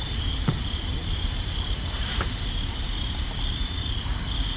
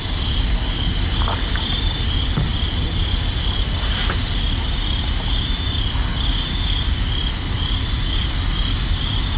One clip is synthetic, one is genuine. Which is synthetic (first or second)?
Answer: first